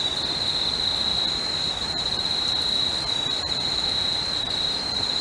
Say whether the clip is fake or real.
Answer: real